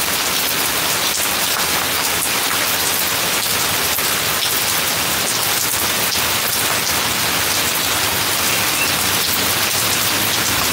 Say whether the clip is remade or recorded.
recorded